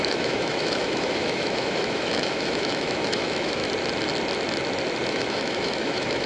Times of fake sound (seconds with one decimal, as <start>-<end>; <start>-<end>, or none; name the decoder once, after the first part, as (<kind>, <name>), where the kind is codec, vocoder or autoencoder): 0.0-3.6 (autoencoder, DAC-VAE); 5.1-6.3